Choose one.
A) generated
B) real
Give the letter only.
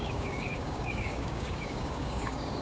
A